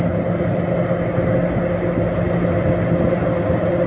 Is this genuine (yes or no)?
yes